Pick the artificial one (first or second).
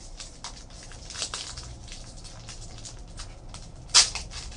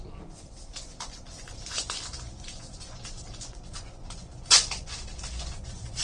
second